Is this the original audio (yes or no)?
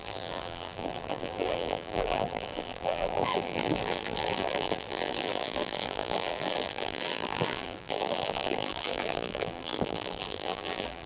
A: no